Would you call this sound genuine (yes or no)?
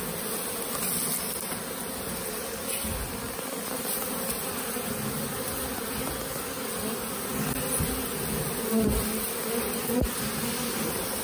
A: yes